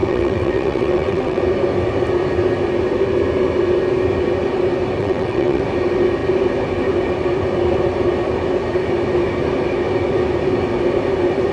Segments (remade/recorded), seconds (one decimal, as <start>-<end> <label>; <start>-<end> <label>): 0.0-1.4 remade; 1.4-5.0 recorded; 5.0-5.6 remade; 5.6-11.5 recorded